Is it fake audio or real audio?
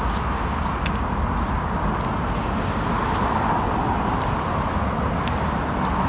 real